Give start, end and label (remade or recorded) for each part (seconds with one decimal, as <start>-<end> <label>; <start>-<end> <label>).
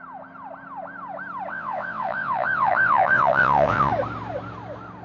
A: 0.0-1.5 recorded; 1.5-3.9 remade; 3.9-5.0 recorded